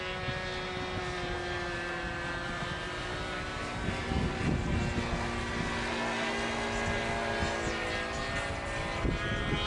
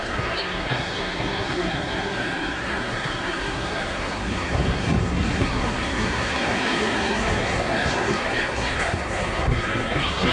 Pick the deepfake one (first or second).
second